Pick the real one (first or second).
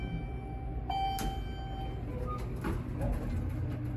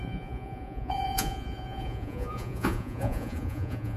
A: first